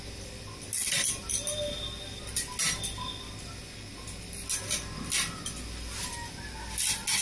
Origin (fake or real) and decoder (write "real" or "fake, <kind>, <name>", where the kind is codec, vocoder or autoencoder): real